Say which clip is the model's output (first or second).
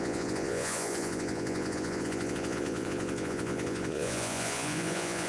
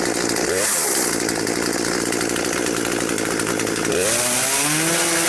first